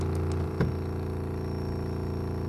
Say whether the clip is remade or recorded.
recorded